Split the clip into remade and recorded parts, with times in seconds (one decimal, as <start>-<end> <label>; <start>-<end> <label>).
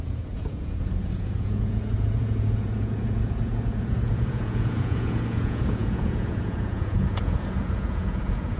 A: 0.0-8.6 remade